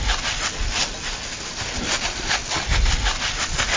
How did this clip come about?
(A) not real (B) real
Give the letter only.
B